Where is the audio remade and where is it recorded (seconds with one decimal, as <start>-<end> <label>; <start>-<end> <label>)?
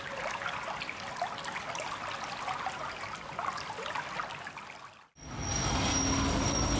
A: 0.0-6.8 recorded